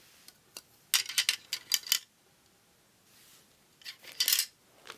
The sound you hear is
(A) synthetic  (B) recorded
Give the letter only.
B